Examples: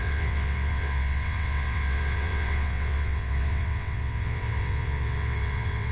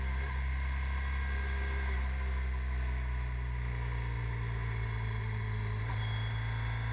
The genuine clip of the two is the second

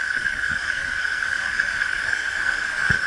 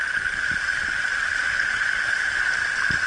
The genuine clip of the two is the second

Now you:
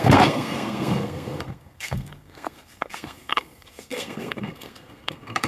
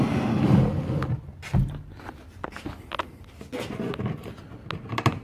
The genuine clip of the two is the second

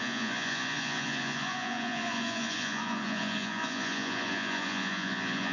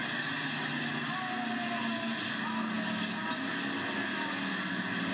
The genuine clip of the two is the second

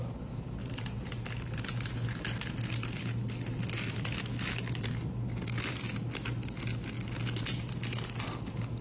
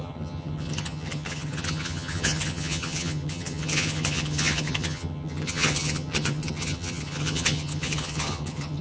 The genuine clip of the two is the first